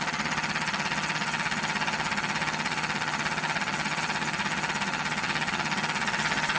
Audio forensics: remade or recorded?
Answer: remade